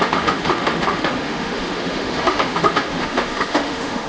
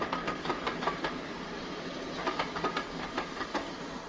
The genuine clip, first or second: second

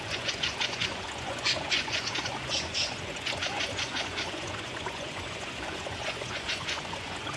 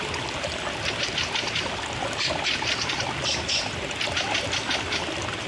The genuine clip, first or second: second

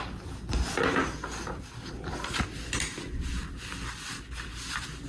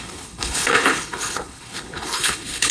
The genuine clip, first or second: first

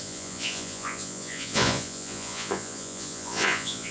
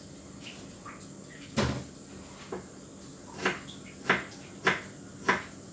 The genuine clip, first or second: second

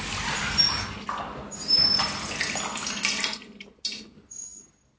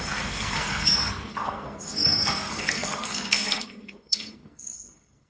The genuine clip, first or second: first